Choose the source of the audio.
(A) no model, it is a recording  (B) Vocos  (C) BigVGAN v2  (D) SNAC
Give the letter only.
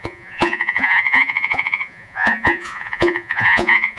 B